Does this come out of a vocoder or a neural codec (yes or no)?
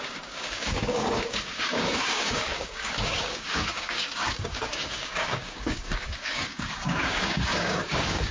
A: yes